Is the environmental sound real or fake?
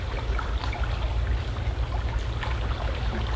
real